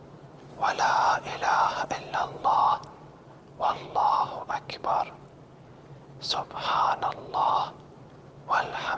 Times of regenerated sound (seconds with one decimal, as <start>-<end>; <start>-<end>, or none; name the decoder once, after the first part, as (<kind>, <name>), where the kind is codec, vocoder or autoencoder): 0.0-3.3 (vocoder, BigVGAN v2); 4.8-9.0